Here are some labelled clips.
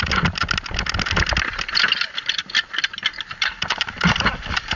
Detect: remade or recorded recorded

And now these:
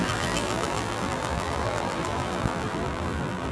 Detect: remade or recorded remade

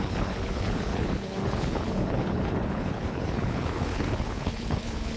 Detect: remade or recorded remade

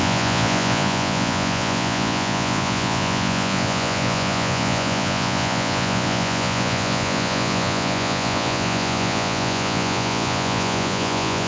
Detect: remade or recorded remade